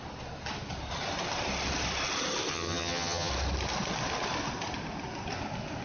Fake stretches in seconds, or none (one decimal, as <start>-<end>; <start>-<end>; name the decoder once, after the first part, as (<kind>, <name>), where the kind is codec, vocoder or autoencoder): 2.5-3.3 (vocoder, HiFi-GAN)